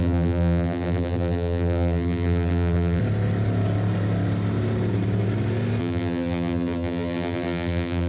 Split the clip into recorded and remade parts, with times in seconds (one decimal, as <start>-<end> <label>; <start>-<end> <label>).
0.0-3.0 remade; 3.0-5.8 recorded; 5.8-8.1 remade